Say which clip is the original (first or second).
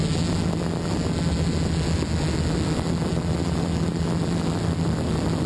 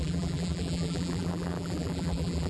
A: first